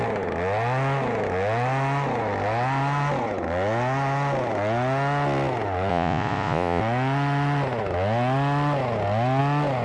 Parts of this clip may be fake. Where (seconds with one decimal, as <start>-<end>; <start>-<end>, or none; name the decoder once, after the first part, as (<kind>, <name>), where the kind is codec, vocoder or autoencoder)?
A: 5.9-6.8 (vocoder, Vocos)